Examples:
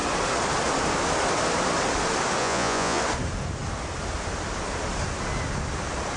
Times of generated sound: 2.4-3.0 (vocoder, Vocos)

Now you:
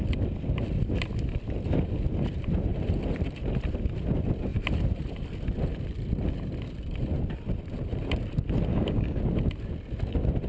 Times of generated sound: 8.7-9.2 (codec, DAC)

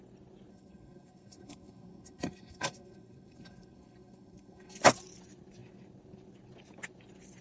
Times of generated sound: 0.5-4.8 (codec, SNAC)

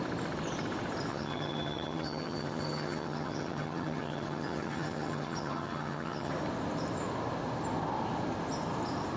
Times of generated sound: 1.1-6.3 (vocoder, HiFi-GAN)